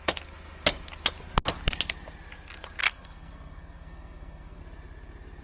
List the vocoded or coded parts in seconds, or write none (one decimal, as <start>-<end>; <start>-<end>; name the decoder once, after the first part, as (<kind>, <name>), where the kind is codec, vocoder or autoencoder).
2.8-4.6 (codec, SNAC)